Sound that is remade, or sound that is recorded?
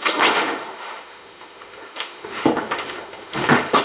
remade